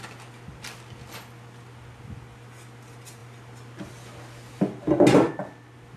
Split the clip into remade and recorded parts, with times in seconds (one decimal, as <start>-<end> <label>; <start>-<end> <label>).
0.0-6.0 recorded

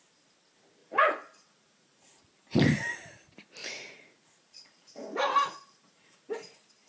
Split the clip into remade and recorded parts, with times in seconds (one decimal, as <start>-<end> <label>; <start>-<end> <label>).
0.0-0.8 recorded; 0.8-2.2 remade; 2.2-3.6 recorded; 3.6-6.3 remade; 6.3-6.9 recorded